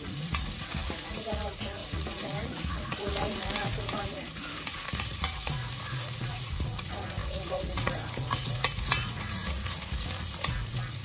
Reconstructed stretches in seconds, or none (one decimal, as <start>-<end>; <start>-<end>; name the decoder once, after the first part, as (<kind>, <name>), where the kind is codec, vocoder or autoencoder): 0.0-11.0 (vocoder, Vocos)